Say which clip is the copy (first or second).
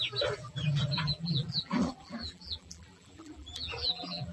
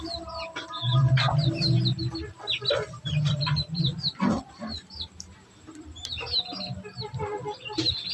first